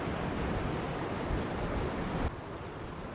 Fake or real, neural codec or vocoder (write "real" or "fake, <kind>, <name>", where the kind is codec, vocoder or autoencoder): real